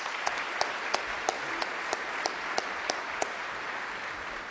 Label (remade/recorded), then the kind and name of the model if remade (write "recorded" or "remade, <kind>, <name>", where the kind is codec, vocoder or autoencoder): recorded